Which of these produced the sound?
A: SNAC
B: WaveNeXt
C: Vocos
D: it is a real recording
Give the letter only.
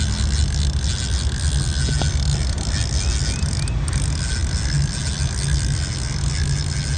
D